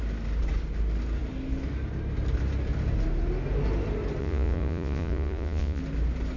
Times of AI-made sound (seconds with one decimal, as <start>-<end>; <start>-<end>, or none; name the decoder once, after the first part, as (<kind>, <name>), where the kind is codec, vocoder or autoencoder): 4.2-5.8 (vocoder, Vocos)